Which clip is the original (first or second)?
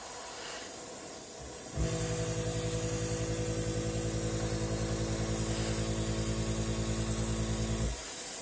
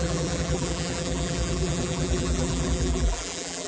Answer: first